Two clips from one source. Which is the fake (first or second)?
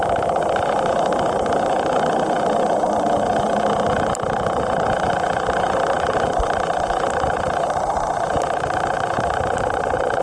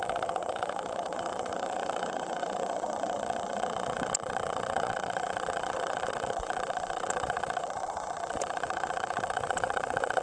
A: second